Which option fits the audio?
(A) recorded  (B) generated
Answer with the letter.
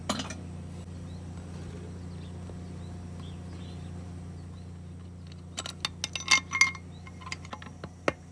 A